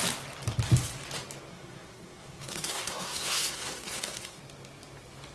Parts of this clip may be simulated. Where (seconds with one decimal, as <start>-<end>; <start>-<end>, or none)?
1.5-4.4